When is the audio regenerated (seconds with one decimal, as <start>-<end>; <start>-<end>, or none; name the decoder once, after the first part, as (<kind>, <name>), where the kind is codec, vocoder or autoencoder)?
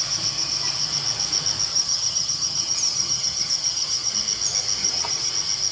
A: 1.7-4.1 (vocoder, HiFi-GAN); 4.8-5.3